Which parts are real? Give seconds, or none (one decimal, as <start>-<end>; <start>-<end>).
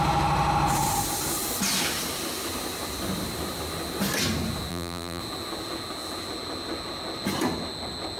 0.0-4.7; 5.2-8.2